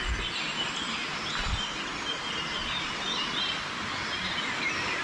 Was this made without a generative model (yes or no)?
yes